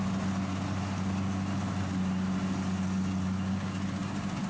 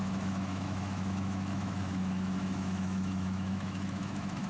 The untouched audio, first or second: first